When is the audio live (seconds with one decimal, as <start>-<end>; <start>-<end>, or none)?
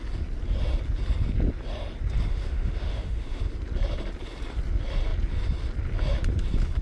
0.0-2.3; 3.4-6.8